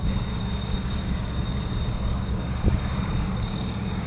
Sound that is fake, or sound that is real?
fake